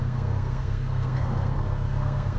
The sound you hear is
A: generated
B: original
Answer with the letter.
A